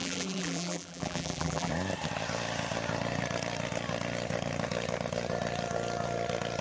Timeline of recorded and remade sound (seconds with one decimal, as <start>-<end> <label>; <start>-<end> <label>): 0.0-1.7 remade; 1.7-6.6 recorded